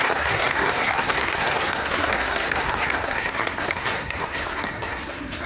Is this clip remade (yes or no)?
yes